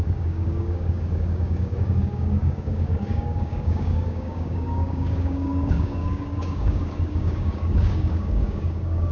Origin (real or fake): fake